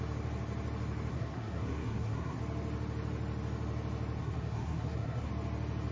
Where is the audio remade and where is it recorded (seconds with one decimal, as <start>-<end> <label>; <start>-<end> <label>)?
0.0-1.1 recorded; 1.1-2.4 remade; 2.4-4.2 recorded; 4.2-5.3 remade; 5.3-5.9 recorded